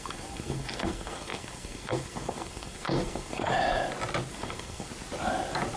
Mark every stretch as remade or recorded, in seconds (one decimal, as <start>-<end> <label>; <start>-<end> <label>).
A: 0.0-3.5 remade; 3.5-4.3 recorded; 4.3-4.9 remade; 4.9-5.8 recorded